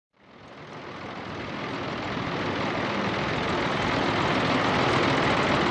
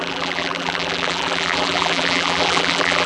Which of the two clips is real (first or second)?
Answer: first